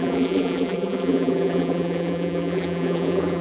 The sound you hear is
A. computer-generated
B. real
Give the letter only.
A